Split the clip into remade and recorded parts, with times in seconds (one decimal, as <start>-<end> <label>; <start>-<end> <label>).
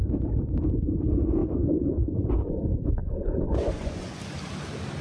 0.0-3.0 recorded; 3.0-4.2 remade; 4.2-5.0 recorded